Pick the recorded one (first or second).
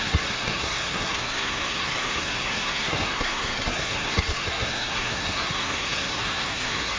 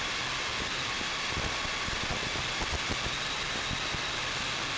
second